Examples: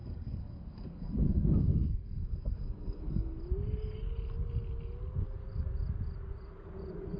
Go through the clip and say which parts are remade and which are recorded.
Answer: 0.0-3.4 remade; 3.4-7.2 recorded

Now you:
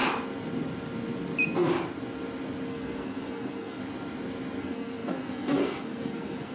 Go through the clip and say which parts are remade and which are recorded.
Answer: 0.0-2.7 recorded; 2.7-3.8 remade; 3.8-4.6 recorded; 4.6-6.5 remade

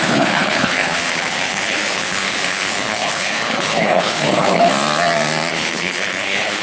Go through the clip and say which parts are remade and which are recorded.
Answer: 0.0-4.7 remade; 4.7-5.5 recorded; 5.5-6.6 remade

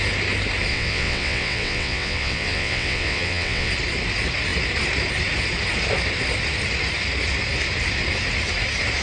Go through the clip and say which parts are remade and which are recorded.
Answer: 0.0-0.7 recorded; 0.7-3.7 remade; 3.7-9.0 recorded

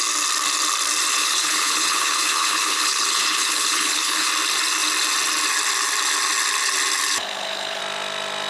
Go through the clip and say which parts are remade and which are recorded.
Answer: 0.0-1.1 recorded; 1.1-4.3 remade; 4.3-7.2 recorded; 7.2-7.8 remade; 7.8-8.5 recorded

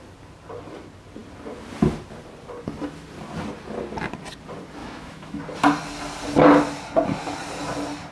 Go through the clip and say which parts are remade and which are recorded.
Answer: 0.0-4.8 recorded; 4.8-5.4 remade; 5.4-8.1 recorded

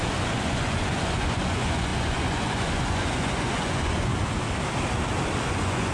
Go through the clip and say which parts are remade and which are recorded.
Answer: 0.0-4.1 remade; 4.1-5.4 recorded; 5.4-5.9 remade